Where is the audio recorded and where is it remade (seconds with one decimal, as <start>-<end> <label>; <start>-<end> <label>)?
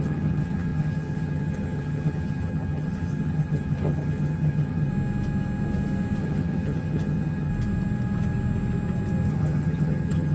0.0-4.9 remade; 4.9-6.2 recorded; 6.2-7.5 remade; 7.5-9.3 recorded; 9.3-10.3 remade